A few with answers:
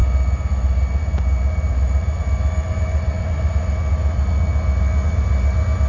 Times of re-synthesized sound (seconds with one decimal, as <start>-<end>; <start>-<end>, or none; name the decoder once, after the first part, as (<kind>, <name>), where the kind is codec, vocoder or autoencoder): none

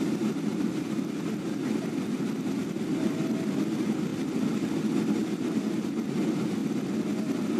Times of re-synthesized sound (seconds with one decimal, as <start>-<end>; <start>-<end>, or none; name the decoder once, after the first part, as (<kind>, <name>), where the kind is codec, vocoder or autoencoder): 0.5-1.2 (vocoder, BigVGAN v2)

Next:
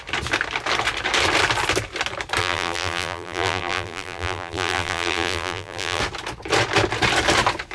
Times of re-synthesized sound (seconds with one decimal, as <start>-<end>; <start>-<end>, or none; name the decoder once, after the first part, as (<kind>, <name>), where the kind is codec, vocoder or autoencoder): 2.4-6.0 (vocoder, BigVGAN v2)